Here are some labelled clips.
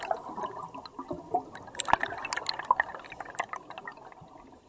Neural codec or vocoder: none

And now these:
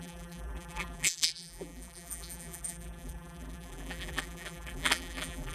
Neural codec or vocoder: vocoder, BigVGAN v2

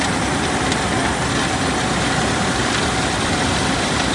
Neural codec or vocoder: vocoder, BigVGAN v2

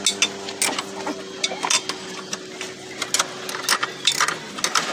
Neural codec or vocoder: none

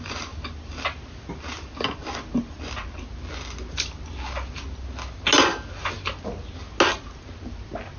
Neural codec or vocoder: none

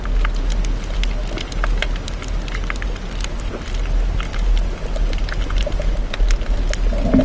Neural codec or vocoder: none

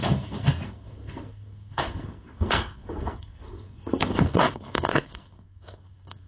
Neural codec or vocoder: codec, SNAC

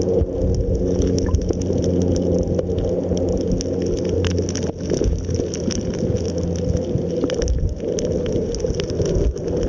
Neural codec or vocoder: none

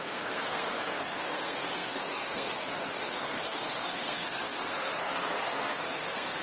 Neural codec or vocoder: codec, SNAC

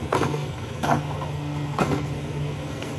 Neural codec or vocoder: codec, SNAC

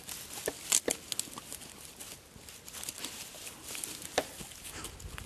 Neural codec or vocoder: none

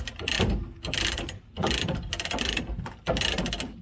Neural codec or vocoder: none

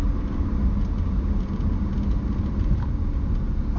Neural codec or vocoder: none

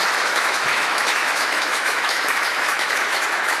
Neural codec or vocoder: autoencoder, DAC-VAE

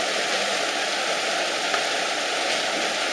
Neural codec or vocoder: none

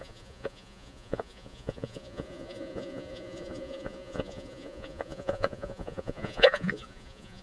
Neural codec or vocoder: vocoder, Vocos